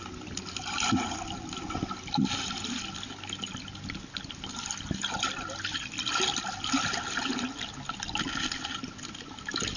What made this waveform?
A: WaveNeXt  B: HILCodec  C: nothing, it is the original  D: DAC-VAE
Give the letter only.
C